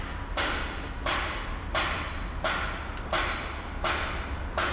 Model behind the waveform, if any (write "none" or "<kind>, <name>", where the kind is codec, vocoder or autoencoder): none